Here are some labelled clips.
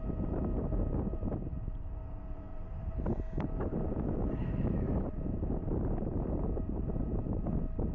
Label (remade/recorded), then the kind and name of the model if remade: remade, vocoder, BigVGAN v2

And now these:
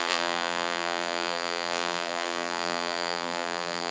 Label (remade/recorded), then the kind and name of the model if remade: remade, vocoder, BigVGAN v2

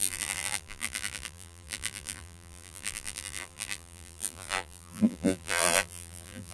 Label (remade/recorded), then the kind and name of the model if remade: remade, vocoder, BigVGAN v2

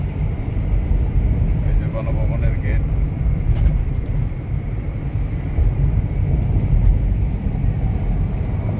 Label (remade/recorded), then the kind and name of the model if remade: remade, vocoder, BigVGAN v2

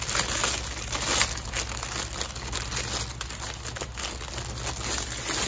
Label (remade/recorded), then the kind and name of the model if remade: recorded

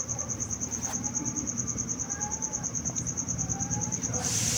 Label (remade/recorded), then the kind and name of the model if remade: remade, vocoder, BigVGAN v2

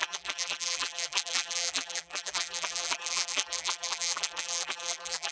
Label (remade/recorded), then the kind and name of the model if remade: remade, vocoder, BigVGAN v2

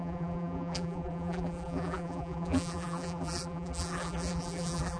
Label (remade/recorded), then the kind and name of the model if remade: remade, vocoder, BigVGAN v2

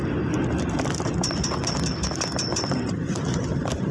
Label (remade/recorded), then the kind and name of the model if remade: remade, vocoder, BigVGAN v2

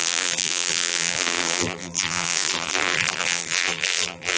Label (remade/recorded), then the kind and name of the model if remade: remade, vocoder, BigVGAN v2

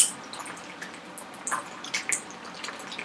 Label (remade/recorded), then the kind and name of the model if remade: recorded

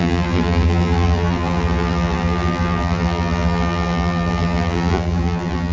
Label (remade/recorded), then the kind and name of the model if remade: remade, vocoder, BigVGAN v2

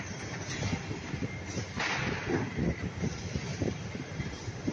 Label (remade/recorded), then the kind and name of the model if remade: recorded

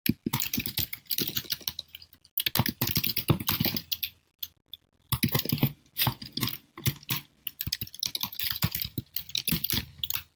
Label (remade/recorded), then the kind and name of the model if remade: recorded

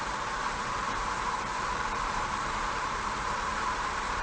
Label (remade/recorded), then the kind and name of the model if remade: remade, vocoder, BigVGAN v2